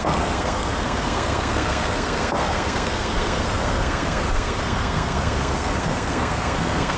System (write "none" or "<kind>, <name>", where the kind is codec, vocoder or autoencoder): codec, SNAC